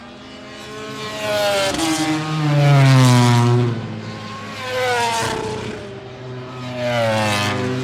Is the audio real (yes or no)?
yes